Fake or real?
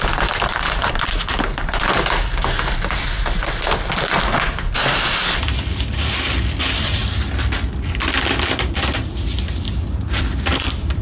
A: real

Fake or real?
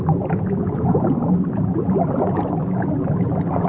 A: real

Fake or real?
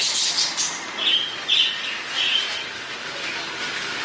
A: real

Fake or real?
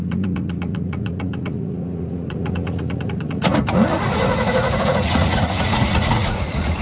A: fake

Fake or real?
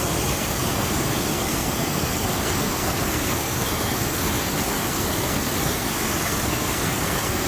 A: fake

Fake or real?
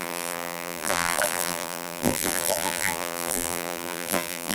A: fake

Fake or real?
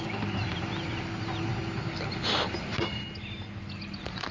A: real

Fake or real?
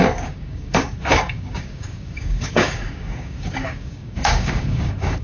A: fake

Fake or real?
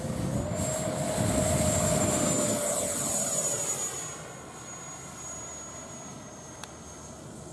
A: real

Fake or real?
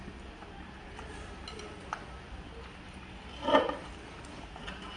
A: real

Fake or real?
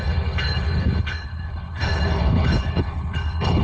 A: fake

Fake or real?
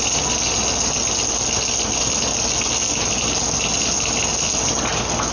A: real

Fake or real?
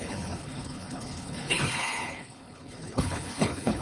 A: fake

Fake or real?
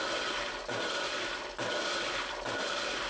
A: real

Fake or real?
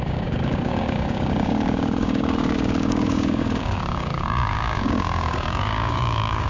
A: fake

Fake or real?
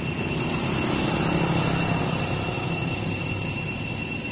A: real